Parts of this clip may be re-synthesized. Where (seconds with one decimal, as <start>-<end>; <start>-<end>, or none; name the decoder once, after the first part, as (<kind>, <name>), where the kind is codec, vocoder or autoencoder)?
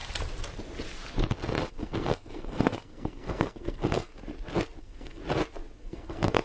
1.7-4.1 (codec, SNAC); 4.8-5.2; 5.8-6.4